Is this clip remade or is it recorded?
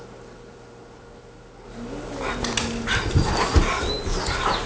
recorded